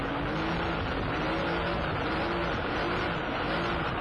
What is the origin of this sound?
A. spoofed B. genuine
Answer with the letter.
B